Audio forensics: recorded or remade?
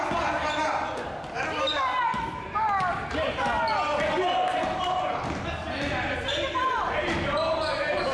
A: recorded